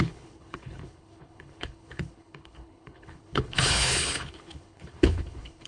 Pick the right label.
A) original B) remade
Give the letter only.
B